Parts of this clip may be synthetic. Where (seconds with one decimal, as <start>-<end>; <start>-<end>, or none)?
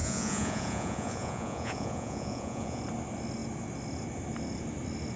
0.0-2.8